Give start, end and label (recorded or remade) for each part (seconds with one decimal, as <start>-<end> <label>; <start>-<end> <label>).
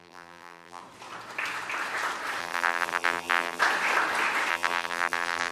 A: 0.0-0.8 remade; 0.8-2.4 recorded; 2.4-3.6 remade; 3.6-4.5 recorded; 4.5-5.5 remade